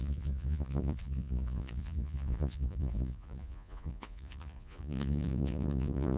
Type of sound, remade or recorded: remade